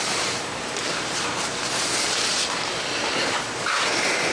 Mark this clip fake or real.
fake